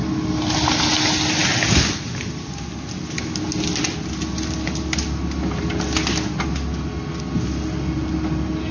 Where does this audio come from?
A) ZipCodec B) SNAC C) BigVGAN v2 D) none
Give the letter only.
D